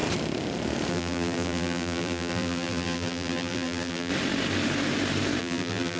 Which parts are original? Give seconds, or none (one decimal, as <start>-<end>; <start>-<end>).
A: 0.0-0.9; 4.1-5.4